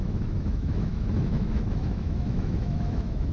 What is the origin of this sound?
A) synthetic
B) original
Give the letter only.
A